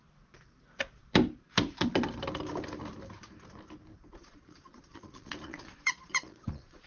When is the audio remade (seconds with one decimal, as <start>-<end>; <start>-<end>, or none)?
4.1-6.9